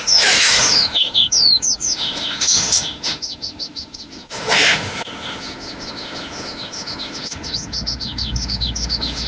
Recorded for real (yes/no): no